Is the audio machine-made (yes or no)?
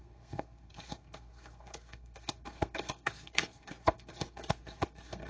yes